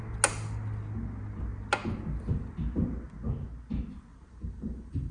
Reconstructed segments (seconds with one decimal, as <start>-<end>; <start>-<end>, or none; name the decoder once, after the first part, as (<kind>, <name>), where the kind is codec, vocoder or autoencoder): 4.1-5.1 (vocoder, BigVGAN v2)